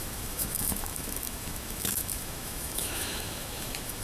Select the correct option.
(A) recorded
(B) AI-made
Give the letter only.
B